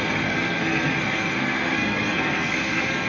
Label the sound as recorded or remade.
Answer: remade